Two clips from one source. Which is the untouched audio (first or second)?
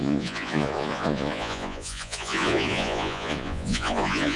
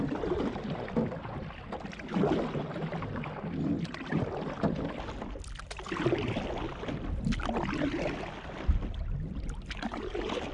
second